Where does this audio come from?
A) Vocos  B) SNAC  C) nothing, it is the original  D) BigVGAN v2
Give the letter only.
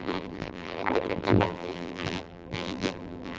D